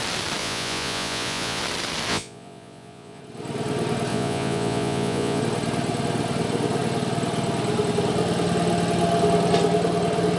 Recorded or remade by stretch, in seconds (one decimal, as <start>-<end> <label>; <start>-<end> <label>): 0.0-0.4 recorded; 0.4-1.6 remade; 1.6-2.1 recorded; 2.1-3.2 remade; 3.2-4.1 recorded; 4.1-5.4 remade; 5.4-10.4 recorded